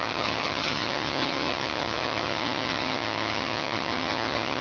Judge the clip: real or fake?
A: fake